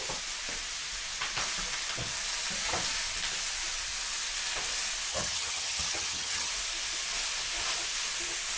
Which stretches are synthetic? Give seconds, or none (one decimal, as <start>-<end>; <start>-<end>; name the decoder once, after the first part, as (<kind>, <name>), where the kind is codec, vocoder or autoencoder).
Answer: 5.1-6.5 (vocoder, HiFi-GAN)